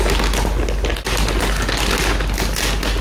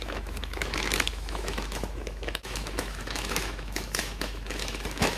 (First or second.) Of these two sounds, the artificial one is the second